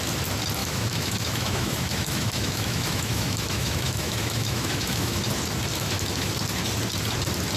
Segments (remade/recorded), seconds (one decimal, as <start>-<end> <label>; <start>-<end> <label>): 0.0-0.6 recorded; 0.6-5.2 remade; 5.2-5.7 recorded; 5.7-6.3 remade; 6.3-7.6 recorded